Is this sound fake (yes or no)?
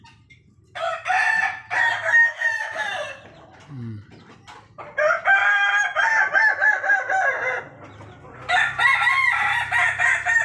no